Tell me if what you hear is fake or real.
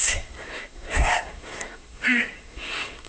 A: fake